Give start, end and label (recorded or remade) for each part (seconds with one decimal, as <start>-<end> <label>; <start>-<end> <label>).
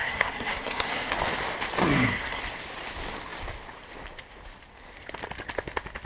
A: 0.0-1.1 remade; 1.1-1.8 recorded; 1.8-2.4 remade; 2.4-6.1 recorded